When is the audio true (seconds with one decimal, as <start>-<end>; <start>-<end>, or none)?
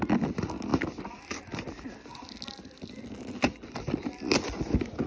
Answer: 0.0-5.1